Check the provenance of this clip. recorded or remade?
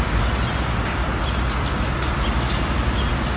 recorded